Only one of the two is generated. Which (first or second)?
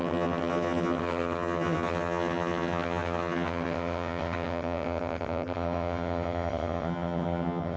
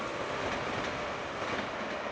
first